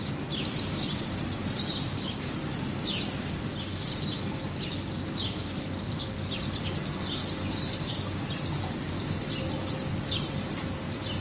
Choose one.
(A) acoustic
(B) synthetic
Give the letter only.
A